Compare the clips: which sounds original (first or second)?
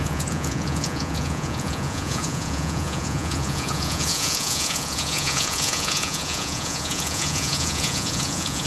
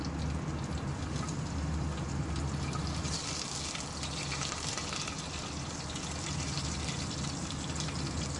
second